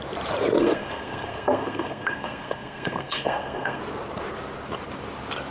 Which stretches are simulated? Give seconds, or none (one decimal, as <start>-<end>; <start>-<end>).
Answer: 0.6-3.8